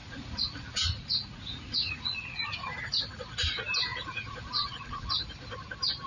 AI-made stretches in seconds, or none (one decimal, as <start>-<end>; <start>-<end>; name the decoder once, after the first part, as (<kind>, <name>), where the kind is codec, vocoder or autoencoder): 0.0-2.8 (vocoder, Vocos); 3.9-5.1